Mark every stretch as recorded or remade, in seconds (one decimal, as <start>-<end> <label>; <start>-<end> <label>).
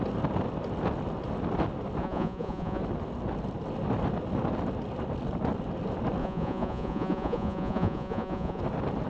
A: 0.0-2.0 recorded; 2.0-2.8 remade; 2.8-6.2 recorded; 6.2-8.6 remade; 8.6-9.1 recorded